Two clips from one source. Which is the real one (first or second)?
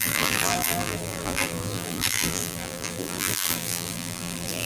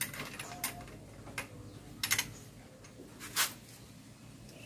second